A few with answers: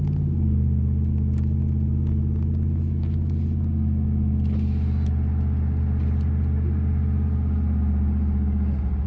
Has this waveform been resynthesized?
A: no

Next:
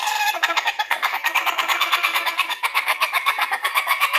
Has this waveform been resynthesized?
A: yes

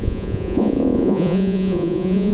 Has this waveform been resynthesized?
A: yes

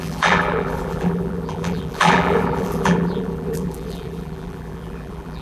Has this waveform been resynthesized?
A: yes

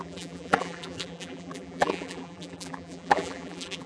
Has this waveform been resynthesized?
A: yes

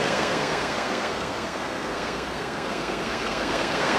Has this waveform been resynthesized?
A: yes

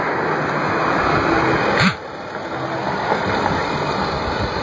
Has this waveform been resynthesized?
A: no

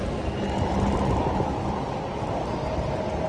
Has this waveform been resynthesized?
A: no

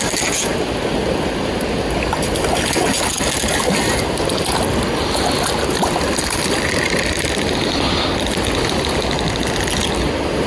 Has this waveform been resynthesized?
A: no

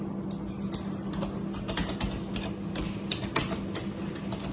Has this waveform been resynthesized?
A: no